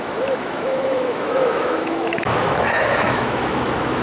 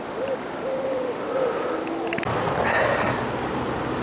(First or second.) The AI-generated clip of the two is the first